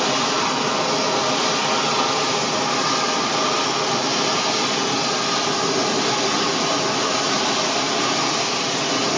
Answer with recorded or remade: recorded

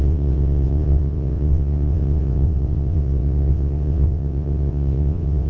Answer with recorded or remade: remade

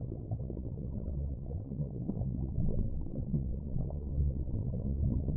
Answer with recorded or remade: remade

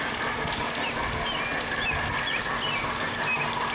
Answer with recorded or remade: recorded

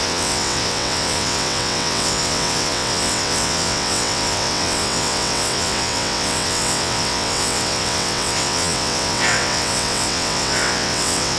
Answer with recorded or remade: remade